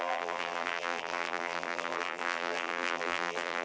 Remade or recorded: remade